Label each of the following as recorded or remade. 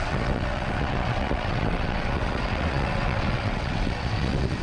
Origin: remade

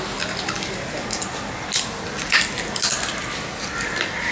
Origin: recorded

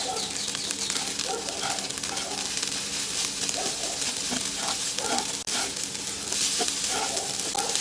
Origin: recorded